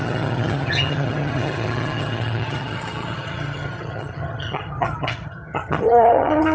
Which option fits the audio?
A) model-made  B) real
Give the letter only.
A